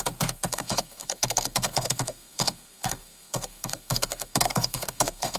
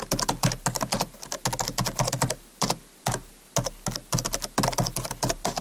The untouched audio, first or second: second